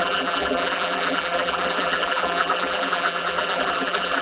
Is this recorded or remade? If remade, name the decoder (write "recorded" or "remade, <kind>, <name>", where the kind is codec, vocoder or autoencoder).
remade, vocoder, BigVGAN v2